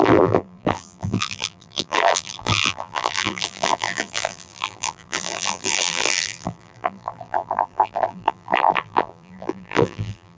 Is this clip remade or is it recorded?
remade